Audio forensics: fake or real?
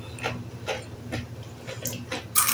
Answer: real